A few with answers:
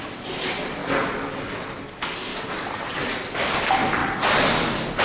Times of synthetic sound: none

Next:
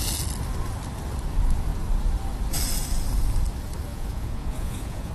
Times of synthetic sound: 3.9-5.1 (vocoder, Vocos)

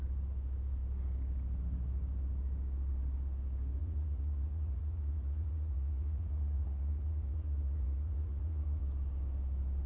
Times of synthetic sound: 3.8-8.8 (vocoder, Vocos)